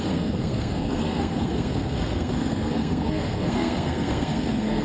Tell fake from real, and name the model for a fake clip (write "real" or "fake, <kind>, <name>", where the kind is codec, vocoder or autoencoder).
fake, codec, SNAC